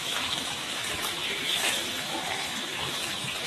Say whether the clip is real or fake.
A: fake